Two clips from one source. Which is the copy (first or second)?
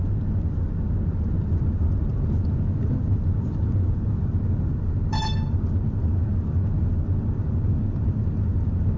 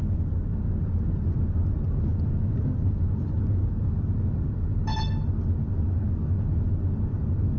first